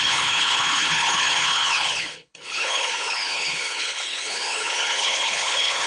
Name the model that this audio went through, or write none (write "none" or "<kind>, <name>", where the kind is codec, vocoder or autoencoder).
codec, HILCodec